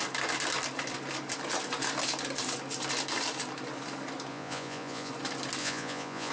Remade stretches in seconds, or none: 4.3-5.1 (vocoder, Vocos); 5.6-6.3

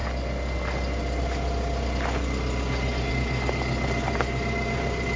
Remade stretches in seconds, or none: none

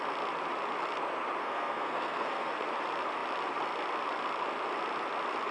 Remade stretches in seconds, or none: 1.4-2.5 (codec, SNAC)